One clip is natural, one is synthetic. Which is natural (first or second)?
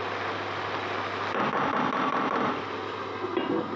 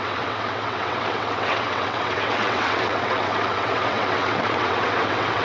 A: first